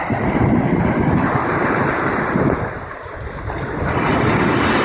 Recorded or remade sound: recorded